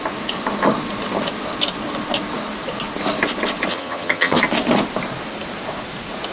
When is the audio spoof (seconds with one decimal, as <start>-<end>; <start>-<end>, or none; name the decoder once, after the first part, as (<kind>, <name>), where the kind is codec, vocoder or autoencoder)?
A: 3.7-4.4 (vocoder, HiFi-GAN)